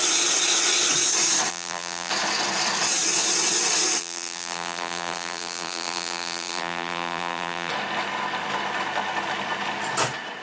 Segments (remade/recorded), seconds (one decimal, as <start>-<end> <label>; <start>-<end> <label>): 0.0-1.5 recorded; 1.5-2.1 remade; 2.1-4.0 recorded; 4.0-7.7 remade; 7.7-10.4 recorded